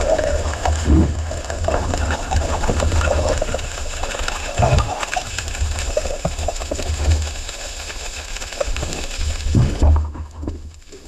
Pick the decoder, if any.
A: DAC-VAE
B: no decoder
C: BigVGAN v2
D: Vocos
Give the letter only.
A